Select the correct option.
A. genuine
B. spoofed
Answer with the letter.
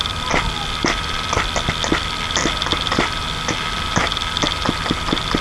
A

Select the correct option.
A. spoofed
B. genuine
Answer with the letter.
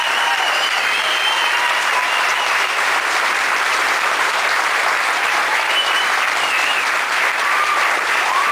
A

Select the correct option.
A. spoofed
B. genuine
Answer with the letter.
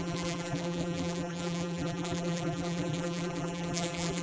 A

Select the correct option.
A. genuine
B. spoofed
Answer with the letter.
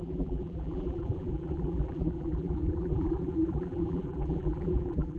B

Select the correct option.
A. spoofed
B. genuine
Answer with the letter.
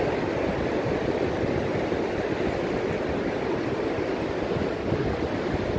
B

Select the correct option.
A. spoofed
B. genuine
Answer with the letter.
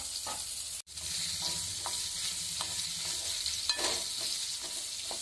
B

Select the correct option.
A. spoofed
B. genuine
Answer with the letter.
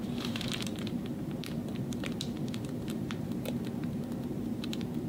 A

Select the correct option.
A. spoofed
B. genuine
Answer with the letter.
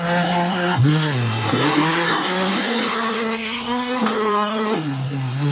A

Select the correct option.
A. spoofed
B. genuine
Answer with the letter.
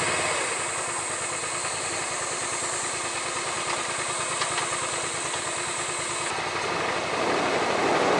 B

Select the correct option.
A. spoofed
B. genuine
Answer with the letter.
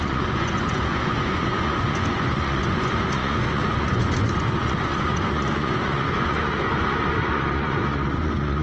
A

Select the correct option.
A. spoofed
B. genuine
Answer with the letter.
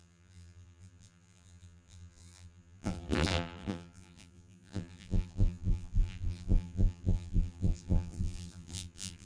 A